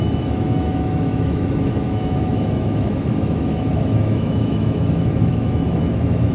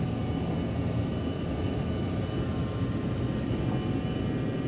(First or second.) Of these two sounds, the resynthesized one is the first